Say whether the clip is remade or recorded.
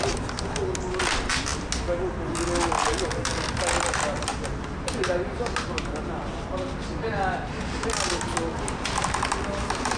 recorded